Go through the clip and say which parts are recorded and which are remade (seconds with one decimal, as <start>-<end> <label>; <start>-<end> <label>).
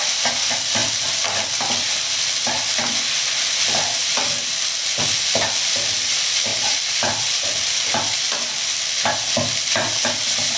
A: 0.0-6.5 recorded; 6.5-7.5 remade; 7.5-10.6 recorded